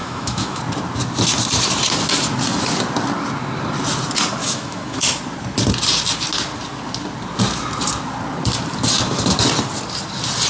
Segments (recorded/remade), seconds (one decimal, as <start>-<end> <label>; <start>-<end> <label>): 0.0-0.6 remade; 0.6-4.4 recorded; 4.4-5.2 remade; 5.2-10.5 recorded